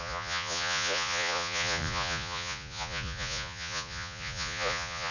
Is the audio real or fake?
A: fake